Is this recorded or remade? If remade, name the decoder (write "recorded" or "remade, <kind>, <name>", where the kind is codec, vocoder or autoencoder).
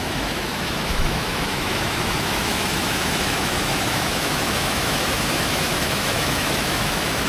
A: remade, autoencoder, DAC-VAE